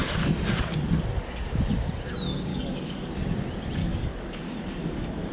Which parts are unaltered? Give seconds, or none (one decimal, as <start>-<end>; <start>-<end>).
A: 0.0-2.5; 3.1-3.8